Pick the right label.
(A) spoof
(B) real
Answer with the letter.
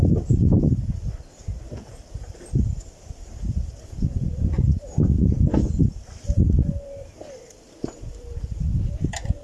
B